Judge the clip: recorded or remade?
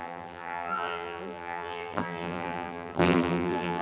remade